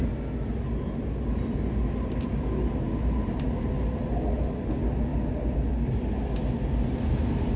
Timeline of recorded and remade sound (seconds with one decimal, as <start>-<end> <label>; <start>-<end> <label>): 0.0-7.6 recorded